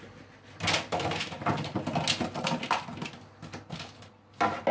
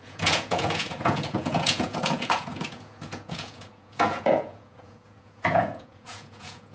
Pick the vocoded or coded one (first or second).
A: second